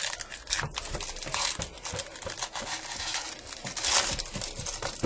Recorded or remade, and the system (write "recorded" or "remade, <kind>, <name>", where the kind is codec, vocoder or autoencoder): recorded